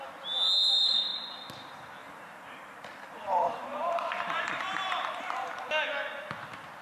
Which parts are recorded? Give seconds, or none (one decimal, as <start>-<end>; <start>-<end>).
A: 0.0-2.0; 5.2-6.8